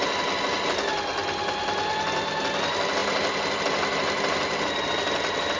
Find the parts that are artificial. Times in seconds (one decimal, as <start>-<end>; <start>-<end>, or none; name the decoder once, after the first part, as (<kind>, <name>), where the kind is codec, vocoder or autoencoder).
none